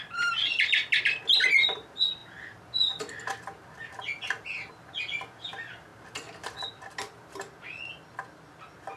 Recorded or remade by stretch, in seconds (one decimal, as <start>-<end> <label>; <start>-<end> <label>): 0.0-9.0 recorded